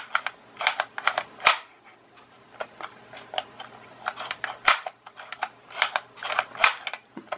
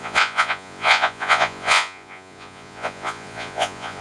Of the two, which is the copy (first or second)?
second